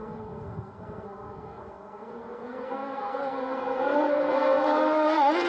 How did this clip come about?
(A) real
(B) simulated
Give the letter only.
B